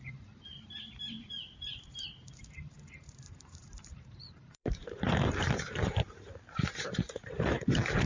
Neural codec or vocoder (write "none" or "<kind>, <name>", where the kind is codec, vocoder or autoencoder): vocoder, BigVGAN v2